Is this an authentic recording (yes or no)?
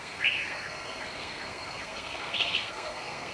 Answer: no